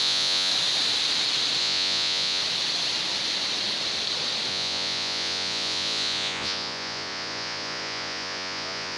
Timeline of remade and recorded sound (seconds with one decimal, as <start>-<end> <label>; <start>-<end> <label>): 0.0-0.5 remade; 0.5-1.6 recorded; 1.6-2.4 remade; 2.4-4.5 recorded; 4.5-9.0 remade